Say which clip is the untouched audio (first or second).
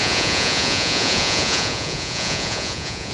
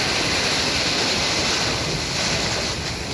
second